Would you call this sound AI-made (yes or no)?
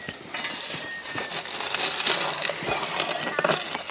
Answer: no